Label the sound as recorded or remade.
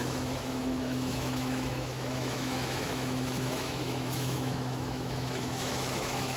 remade